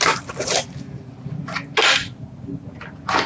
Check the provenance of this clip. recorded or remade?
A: recorded